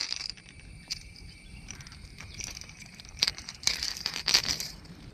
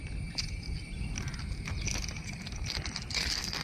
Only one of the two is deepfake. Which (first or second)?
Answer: first